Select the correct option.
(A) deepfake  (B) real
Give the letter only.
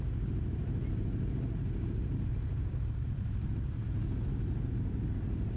A